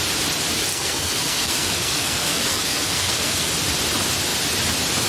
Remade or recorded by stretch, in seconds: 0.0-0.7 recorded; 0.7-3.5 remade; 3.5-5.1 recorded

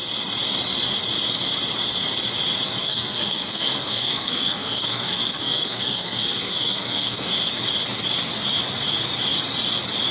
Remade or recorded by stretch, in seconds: 0.0-2.8 recorded; 2.8-7.3 remade; 7.3-10.1 recorded